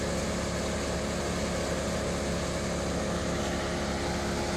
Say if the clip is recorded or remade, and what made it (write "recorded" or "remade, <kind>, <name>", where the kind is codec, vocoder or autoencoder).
recorded